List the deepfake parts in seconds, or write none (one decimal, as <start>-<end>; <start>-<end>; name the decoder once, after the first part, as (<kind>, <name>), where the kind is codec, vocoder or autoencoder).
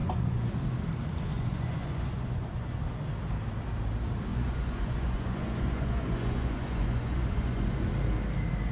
0.0-0.5 (vocoder, Vocos); 1.3-2.8; 4.3-7.9